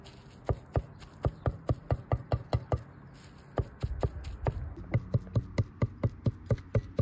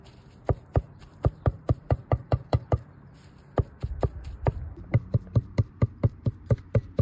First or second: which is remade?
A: second